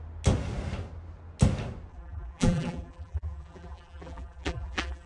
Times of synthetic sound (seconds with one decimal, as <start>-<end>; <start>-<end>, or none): 1.9-5.1